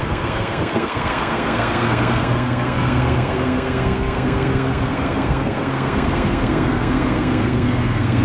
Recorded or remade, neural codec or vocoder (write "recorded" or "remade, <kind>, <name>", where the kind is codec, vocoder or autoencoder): remade, codec, SNAC